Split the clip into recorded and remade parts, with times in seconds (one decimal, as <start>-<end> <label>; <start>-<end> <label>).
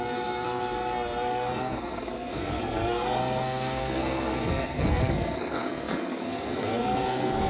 0.0-7.5 remade